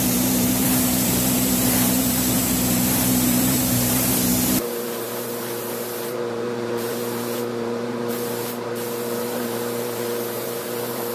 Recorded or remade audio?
remade